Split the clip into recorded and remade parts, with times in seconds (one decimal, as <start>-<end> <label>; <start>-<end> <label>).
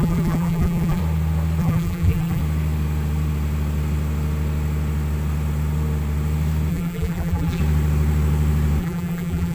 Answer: 0.0-1.0 remade; 1.0-1.6 recorded; 1.6-2.4 remade; 2.4-6.7 recorded; 6.7-7.6 remade; 7.6-8.8 recorded; 8.8-9.5 remade